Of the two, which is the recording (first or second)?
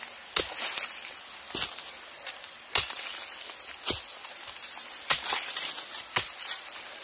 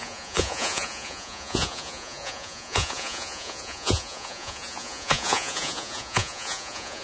first